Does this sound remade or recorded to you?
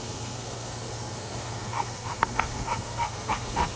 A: remade